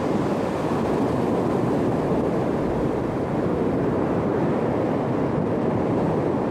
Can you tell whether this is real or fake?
real